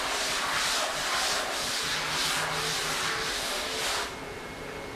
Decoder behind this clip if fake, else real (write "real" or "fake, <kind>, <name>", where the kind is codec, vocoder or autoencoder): fake, vocoder, BigVGAN v2